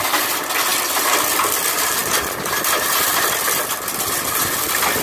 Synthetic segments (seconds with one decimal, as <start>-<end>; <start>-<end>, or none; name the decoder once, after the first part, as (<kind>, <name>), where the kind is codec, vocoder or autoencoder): none

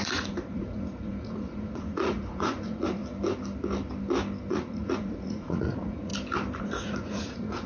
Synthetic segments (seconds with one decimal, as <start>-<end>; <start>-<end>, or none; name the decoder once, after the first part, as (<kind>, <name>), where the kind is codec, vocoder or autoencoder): 0.0-3.0 (vocoder, Vocos); 4.5-6.1; 6.6-7.7

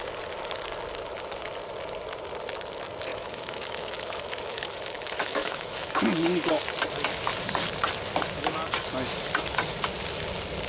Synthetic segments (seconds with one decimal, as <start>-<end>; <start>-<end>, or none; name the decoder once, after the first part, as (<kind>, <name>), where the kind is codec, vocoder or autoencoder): 3.1-6.0 (autoencoder, DAC-VAE)

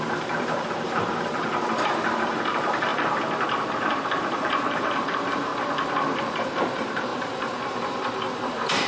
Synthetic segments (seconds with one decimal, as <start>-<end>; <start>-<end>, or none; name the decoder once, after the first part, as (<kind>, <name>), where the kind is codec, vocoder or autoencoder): 0.0-2.9 (vocoder, BigVGAN v2); 3.9-5.5; 6.2-8.9

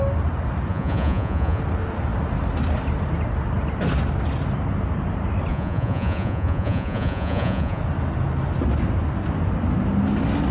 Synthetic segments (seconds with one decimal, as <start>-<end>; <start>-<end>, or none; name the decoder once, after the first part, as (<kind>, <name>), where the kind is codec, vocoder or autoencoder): 0.7-1.6 (vocoder, Vocos); 5.5-7.8

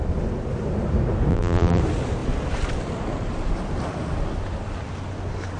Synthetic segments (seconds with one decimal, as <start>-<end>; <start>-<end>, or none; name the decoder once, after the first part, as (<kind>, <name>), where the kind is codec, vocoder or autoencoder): 1.3-1.8 (vocoder, BigVGAN v2)